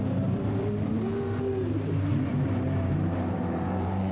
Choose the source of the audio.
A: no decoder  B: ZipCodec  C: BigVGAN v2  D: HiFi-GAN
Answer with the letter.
C